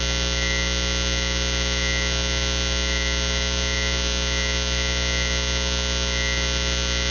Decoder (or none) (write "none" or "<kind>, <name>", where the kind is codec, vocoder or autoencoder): none